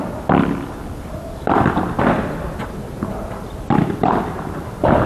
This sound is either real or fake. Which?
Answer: real